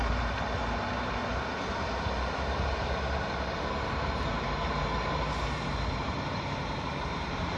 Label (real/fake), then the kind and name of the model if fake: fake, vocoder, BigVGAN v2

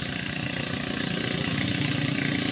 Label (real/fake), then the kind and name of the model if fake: real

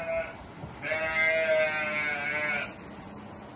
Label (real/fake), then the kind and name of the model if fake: real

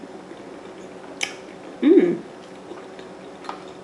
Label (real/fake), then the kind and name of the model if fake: real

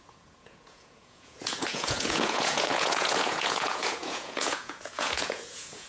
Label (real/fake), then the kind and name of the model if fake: fake, vocoder, Vocos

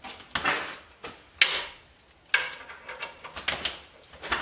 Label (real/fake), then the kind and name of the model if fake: real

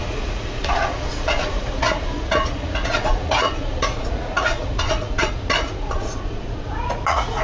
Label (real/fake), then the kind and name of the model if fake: fake, vocoder, Vocos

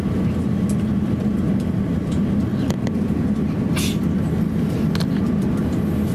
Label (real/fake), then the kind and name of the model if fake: real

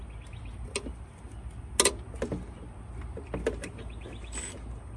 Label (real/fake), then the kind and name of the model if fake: real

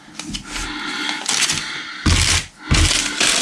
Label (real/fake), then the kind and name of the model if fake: real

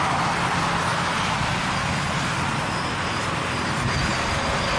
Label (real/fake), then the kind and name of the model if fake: real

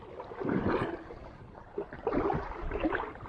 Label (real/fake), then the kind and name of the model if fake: fake, vocoder, BigVGAN v2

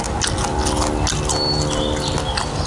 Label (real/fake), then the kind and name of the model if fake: real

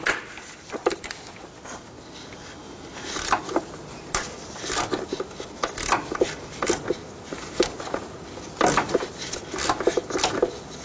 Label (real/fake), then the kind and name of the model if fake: real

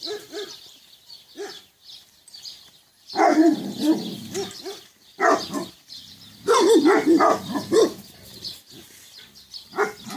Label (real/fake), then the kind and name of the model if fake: real